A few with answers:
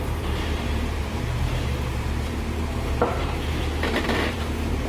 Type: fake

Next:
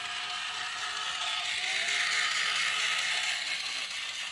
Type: real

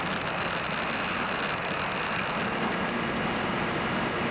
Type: real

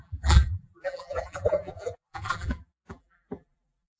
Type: fake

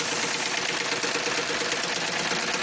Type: real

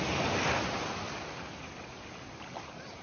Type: real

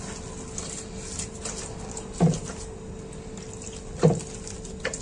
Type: real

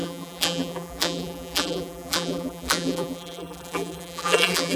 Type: fake